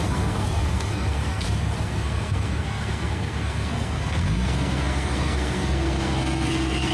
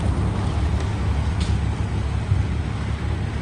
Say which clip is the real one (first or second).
second